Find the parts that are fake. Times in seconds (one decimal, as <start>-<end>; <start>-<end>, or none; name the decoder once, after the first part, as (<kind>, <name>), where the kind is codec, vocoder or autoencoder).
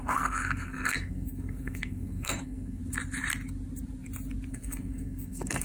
0.0-2.8 (codec, SNAC); 4.5-5.6